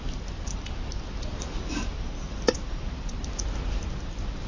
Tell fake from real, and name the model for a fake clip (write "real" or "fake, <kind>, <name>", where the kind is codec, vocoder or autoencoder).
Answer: real